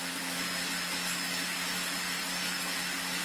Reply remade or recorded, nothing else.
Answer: recorded